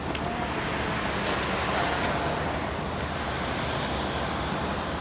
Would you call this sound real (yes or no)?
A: yes